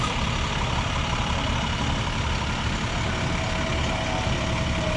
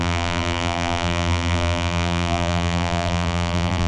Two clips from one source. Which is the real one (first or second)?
first